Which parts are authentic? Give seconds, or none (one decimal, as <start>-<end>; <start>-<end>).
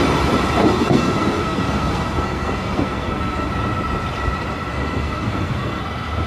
0.0-0.6; 3.5-4.7; 5.8-6.3